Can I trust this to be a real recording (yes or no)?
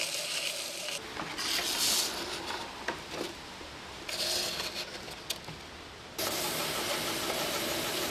yes